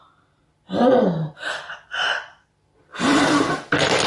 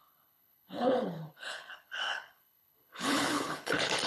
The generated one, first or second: second